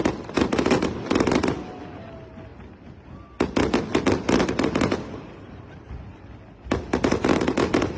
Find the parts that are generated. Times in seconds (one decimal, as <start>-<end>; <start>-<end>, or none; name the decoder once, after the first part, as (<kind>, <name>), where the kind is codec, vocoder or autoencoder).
none